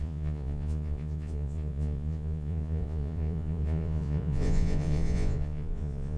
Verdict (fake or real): fake